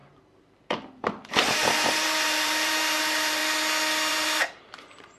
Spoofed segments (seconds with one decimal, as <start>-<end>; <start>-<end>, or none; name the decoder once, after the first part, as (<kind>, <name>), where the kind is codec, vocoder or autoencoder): 0.0-3.4 (vocoder, BigVGAN v2); 4.1-5.2